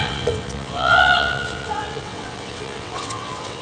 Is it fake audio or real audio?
fake